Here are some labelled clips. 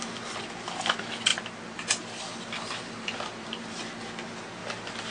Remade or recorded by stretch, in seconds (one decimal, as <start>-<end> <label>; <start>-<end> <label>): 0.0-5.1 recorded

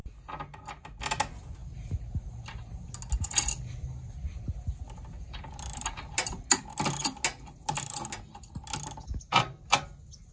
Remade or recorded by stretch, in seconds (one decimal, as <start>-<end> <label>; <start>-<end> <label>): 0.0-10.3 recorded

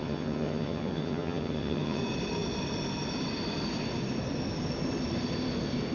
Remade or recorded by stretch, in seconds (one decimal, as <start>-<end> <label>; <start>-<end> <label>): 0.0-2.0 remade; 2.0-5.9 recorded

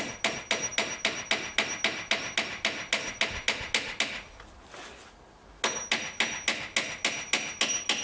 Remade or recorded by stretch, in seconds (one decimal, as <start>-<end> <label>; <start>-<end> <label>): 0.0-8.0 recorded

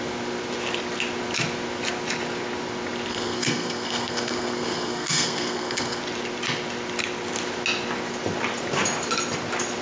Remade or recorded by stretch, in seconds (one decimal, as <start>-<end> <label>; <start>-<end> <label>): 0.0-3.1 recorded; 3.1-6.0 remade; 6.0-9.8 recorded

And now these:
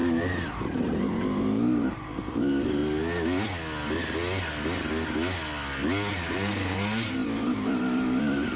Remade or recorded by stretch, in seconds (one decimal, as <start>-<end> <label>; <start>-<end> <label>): 0.0-2.8 remade; 2.8-6.1 recorded; 6.1-8.6 remade